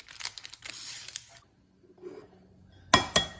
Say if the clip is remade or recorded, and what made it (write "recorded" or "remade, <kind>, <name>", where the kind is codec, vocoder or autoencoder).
recorded